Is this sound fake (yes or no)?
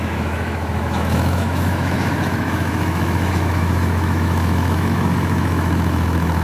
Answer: yes